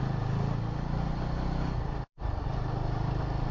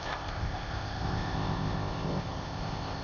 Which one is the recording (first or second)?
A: first